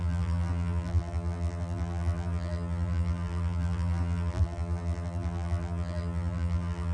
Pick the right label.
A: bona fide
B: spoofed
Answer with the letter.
B